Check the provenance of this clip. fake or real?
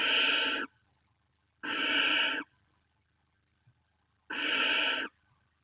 real